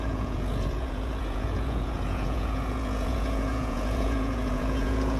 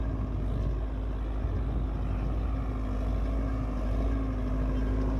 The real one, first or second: second